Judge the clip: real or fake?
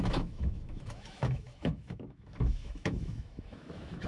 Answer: fake